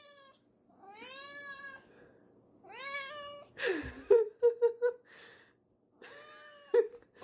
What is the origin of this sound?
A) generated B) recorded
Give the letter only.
B